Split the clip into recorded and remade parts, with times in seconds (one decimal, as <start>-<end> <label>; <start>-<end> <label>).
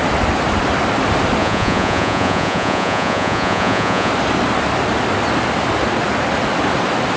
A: 0.0-1.4 recorded; 1.4-4.1 remade; 4.1-7.2 recorded